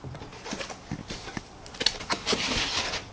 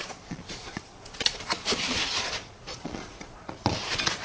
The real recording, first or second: first